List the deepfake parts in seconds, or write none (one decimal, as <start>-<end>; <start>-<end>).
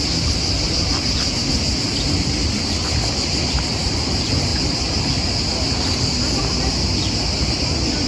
none